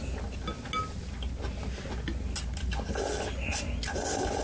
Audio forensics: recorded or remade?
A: recorded